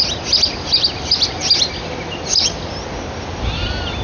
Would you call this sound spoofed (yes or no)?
no